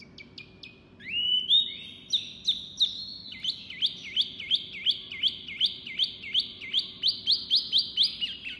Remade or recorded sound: recorded